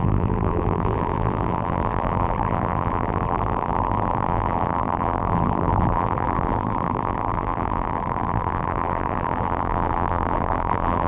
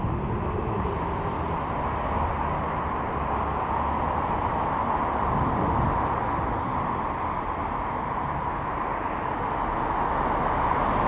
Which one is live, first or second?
second